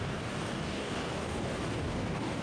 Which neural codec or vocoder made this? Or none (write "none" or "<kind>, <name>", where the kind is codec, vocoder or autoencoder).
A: codec, DAC